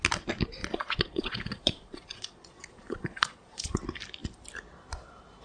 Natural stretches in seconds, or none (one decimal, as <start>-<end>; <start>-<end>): 0.0-0.6; 3.8-5.4